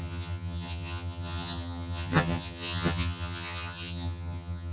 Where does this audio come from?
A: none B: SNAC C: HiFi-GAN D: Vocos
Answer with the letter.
C